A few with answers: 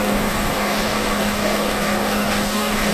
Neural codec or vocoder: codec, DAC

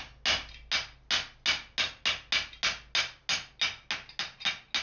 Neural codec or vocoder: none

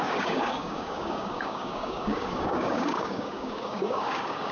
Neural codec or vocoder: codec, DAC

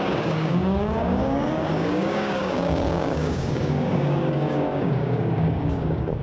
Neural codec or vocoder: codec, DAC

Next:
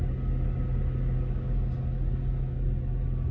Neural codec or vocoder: none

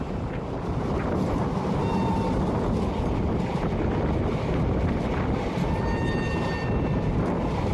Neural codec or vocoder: none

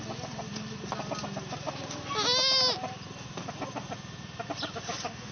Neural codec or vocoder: none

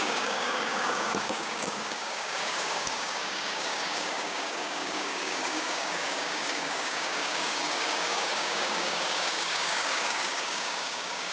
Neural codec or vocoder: codec, DAC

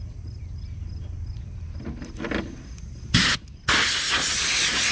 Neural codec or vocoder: none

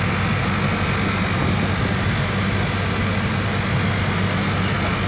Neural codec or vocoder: none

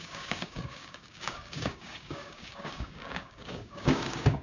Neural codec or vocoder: codec, DAC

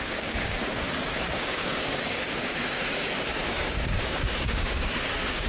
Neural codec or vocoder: codec, DAC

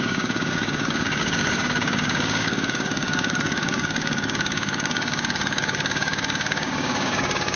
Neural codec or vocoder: codec, DAC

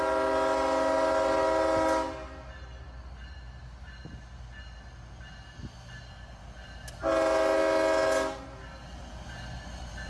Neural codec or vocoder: none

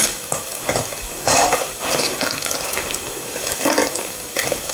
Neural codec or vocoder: codec, DAC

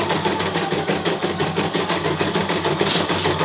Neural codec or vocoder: codec, DAC